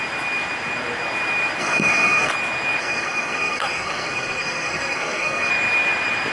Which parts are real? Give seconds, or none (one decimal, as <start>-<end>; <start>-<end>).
0.0-1.6; 2.3-2.8; 5.5-6.3

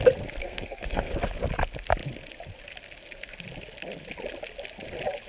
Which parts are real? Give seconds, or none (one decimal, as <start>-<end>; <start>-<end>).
0.0-0.4; 1.1-5.3

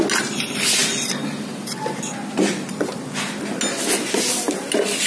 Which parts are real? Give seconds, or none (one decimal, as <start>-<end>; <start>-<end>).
0.0-5.1

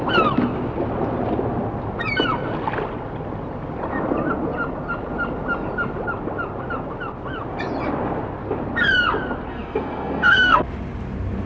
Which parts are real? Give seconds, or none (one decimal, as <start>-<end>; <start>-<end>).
0.0-9.5; 10.6-11.5

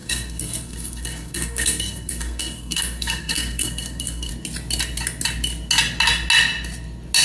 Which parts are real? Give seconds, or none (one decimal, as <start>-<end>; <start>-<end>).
4.3-7.2